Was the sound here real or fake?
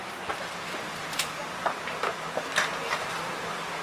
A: real